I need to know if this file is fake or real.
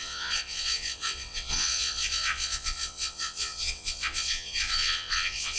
fake